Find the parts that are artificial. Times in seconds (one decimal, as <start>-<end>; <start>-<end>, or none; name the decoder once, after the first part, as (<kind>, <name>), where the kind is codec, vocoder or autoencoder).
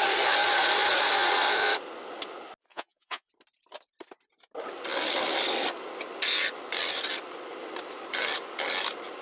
2.7-3.3 (vocoder, Vocos)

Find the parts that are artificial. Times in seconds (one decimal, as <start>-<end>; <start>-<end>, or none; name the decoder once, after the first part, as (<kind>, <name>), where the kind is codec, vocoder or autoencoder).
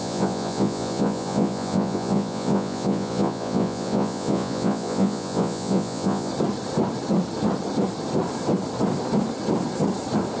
0.0-6.3 (vocoder, Vocos)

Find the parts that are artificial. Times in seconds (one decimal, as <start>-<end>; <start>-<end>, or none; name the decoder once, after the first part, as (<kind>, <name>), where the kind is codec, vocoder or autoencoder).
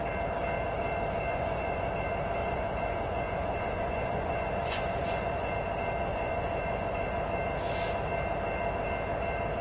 1.3-1.9 (vocoder, Vocos); 2.4-5.5; 6.1-7.1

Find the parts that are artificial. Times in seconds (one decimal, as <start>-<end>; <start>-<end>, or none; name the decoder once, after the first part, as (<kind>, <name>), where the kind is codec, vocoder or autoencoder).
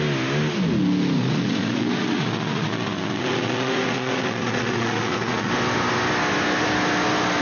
1.2-5.5 (vocoder, Vocos)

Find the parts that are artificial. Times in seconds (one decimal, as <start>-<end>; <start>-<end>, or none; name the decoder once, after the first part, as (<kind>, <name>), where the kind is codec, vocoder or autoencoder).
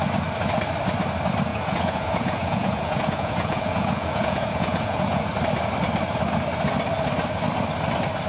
1.5-5.3 (vocoder, Vocos)